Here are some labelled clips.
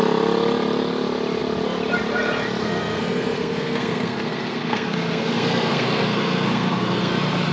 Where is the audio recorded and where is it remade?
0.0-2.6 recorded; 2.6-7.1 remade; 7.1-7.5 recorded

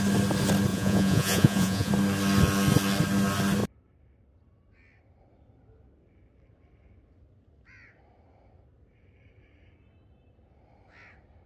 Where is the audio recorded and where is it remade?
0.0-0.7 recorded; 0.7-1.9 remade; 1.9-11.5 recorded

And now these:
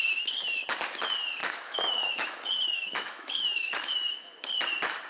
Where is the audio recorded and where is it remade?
0.0-1.4 recorded; 1.4-4.5 remade; 4.5-5.1 recorded

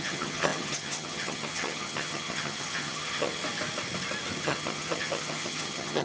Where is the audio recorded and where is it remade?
0.0-3.4 remade; 3.4-4.4 recorded; 4.4-6.0 remade